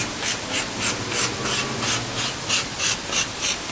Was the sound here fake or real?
real